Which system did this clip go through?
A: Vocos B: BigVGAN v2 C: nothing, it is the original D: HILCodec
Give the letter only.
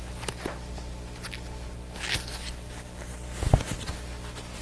C